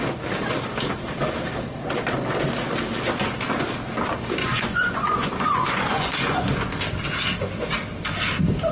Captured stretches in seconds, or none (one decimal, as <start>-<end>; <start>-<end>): 0.0-4.4; 6.7-8.7